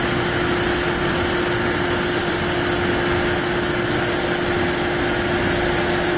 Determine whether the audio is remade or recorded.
recorded